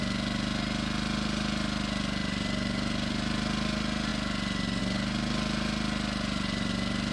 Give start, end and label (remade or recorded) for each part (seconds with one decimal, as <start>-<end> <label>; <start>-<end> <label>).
0.0-2.2 recorded; 2.2-3.1 remade; 3.1-7.1 recorded